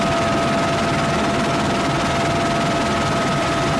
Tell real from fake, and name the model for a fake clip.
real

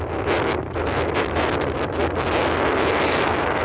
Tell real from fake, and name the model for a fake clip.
real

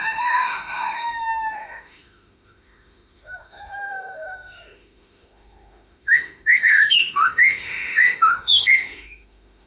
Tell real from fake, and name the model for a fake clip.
fake, autoencoder, DAC-VAE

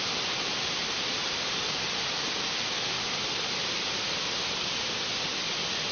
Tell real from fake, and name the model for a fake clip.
real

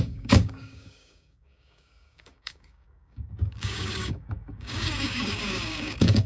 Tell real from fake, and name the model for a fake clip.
fake, codec, DAC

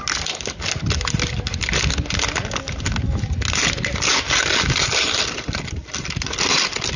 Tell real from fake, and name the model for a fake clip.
real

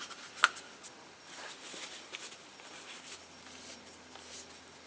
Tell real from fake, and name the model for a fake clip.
real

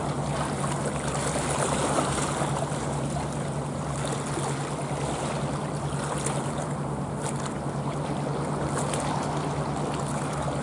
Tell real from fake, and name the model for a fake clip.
real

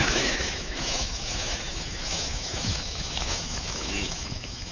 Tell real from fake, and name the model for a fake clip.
fake, autoencoder, DAC-VAE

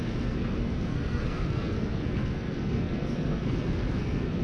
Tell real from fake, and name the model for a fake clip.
fake, codec, SNAC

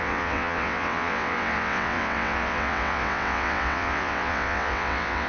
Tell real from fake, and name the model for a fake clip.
fake, vocoder, WaveNeXt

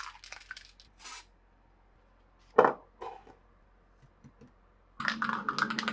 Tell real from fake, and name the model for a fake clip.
real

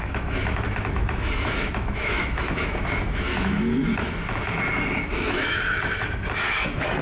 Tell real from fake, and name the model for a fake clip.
fake, autoencoder, DAC-VAE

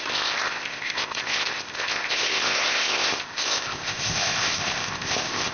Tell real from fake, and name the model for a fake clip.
fake, codec, ZipCodec